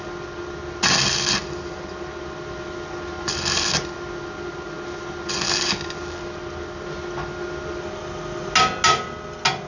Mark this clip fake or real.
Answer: real